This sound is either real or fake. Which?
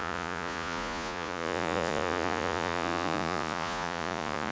fake